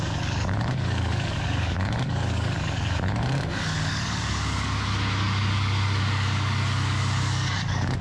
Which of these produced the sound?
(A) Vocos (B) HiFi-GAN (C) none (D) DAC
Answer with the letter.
D